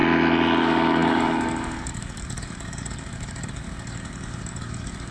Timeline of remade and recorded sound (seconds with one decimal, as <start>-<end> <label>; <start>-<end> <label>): 0.0-0.6 recorded; 0.6-5.1 remade